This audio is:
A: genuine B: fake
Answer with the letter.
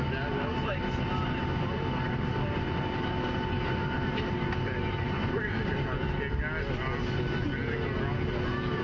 A